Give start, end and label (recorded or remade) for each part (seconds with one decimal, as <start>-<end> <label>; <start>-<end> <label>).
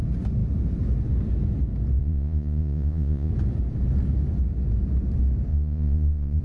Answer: 0.0-2.0 recorded; 2.0-3.3 remade; 3.3-5.5 recorded; 5.5-6.4 remade